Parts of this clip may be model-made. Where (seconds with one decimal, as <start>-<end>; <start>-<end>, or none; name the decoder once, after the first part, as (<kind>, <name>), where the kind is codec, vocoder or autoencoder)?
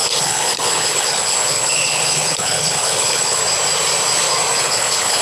0.0-3.4 (codec, HILCodec); 4.6-5.2